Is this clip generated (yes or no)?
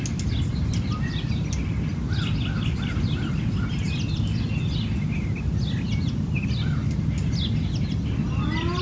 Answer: no